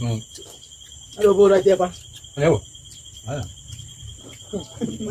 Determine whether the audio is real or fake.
real